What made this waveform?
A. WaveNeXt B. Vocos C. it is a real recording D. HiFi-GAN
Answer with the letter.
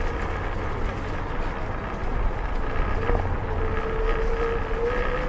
C